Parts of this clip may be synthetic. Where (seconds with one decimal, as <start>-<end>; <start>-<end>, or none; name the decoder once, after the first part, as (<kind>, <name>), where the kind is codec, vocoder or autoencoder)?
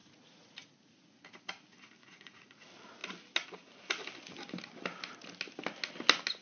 0.0-1.4 (vocoder, Vocos); 2.0-2.6